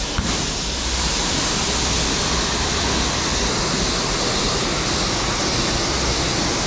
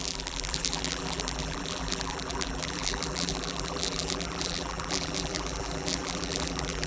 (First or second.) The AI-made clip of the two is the second